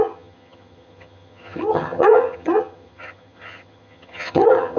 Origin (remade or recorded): remade